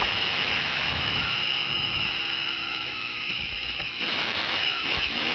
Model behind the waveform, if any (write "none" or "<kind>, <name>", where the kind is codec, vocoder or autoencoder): autoencoder, DAC-VAE